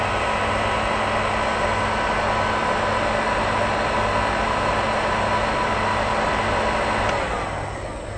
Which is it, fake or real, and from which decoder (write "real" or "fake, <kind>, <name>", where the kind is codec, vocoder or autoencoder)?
real